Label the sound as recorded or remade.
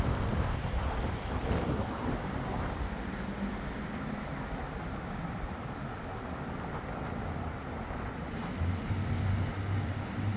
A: recorded